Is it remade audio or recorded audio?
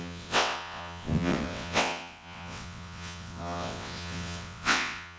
remade